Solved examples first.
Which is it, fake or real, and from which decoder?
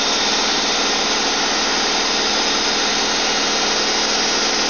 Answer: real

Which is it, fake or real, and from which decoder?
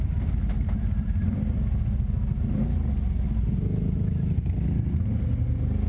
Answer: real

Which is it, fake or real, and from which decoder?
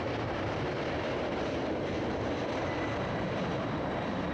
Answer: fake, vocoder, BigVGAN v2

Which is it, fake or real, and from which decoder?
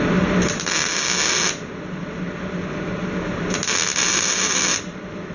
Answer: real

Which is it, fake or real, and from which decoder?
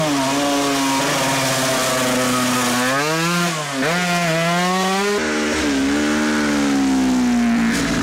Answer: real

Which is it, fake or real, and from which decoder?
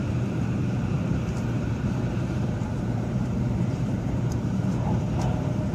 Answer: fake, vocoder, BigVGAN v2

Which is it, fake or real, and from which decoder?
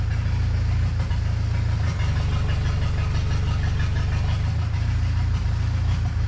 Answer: real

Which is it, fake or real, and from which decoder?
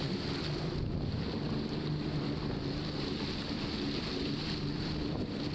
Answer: real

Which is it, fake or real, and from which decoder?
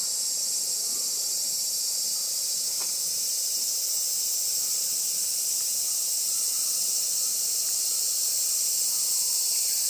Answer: real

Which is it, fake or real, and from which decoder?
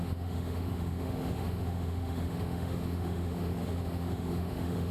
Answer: fake, autoencoder, DAC-VAE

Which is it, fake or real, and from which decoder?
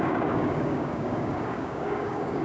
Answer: fake, codec, DAC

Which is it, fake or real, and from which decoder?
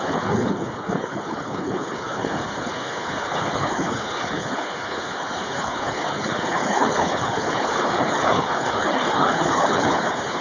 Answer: fake, codec, HILCodec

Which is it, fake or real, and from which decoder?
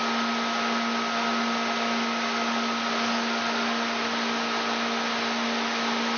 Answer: real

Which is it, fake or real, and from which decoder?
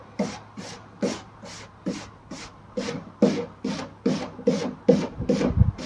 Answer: real